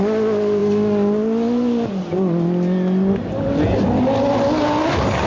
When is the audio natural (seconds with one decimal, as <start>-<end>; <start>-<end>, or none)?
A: 0.0-5.3